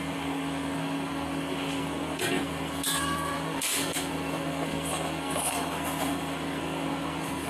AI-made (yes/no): yes